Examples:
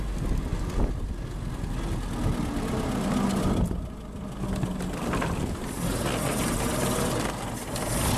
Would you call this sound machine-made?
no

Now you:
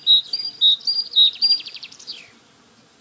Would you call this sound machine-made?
no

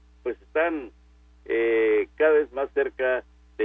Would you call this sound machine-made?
no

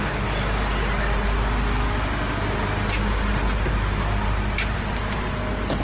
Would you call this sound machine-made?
no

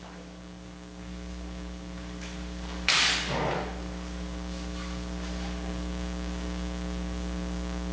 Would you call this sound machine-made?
yes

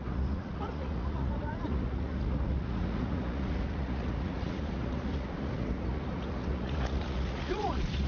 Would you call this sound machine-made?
yes